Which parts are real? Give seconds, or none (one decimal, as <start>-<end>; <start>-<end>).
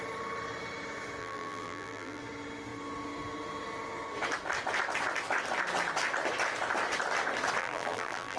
0.0-1.2; 2.2-7.6